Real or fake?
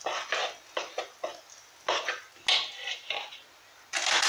real